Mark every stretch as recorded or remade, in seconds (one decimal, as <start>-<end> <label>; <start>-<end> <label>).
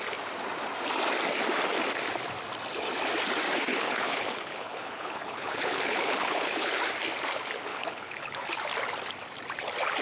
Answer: 0.0-3.7 recorded; 3.7-6.8 remade; 6.8-7.7 recorded; 7.7-8.5 remade; 8.5-10.0 recorded